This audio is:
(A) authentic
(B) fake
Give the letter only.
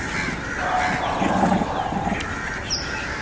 A